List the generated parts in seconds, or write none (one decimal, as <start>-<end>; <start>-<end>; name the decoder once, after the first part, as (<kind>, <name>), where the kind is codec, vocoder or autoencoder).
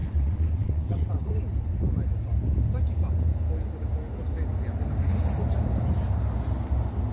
0.0-1.3 (vocoder, WaveNeXt)